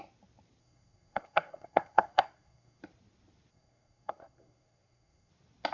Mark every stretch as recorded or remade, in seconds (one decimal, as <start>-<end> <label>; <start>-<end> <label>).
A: 0.0-0.6 recorded; 0.6-2.8 remade; 2.8-3.5 recorded; 3.5-5.3 remade; 5.3-5.7 recorded